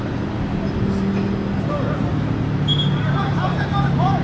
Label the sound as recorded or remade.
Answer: recorded